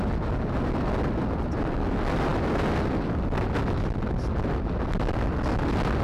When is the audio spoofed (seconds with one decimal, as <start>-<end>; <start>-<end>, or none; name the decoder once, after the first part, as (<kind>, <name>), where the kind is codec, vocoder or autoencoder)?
none